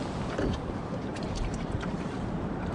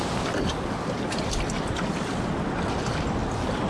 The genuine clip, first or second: second